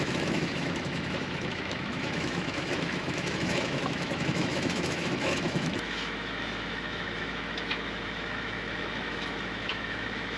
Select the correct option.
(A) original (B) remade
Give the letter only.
B